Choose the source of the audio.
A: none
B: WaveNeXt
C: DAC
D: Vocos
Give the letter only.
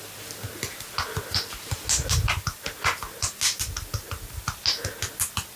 A